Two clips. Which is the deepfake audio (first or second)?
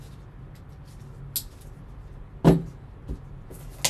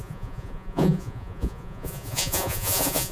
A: second